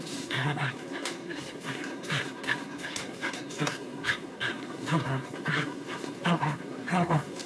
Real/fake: fake